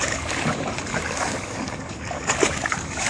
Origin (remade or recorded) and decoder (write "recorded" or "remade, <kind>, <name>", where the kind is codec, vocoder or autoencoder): remade, codec, DAC